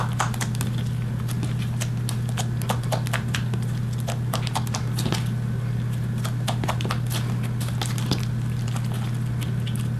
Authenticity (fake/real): real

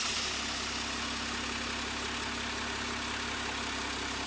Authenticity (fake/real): real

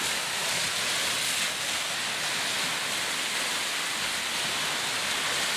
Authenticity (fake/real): real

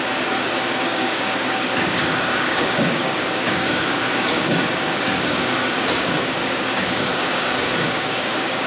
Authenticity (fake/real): fake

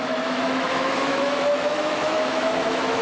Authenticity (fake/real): fake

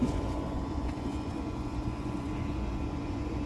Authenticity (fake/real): fake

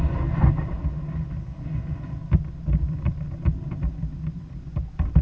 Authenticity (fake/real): real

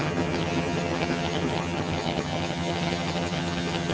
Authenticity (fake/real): fake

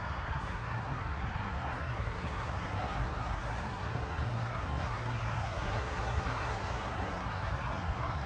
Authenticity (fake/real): fake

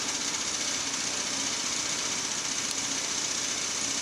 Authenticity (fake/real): real